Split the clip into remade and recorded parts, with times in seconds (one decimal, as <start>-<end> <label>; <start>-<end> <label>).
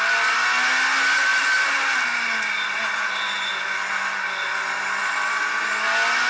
0.0-6.3 recorded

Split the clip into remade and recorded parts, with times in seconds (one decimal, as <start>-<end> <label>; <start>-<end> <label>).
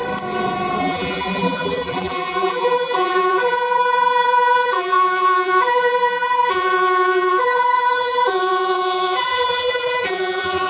0.0-0.8 recorded; 0.8-10.7 remade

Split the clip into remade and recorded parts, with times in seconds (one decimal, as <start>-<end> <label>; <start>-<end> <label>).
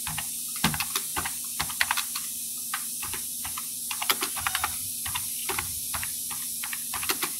0.0-7.4 remade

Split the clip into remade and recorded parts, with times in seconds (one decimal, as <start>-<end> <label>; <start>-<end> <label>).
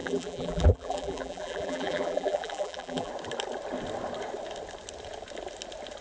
0.0-3.1 remade; 3.1-6.0 recorded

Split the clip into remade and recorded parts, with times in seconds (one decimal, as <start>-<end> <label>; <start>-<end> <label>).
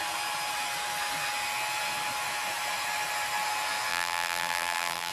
0.0-3.9 recorded; 3.9-5.1 remade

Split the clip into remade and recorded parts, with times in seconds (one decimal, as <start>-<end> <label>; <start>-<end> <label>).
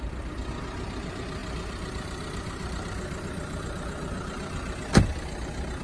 0.0-1.4 recorded; 1.4-4.9 remade; 4.9-5.8 recorded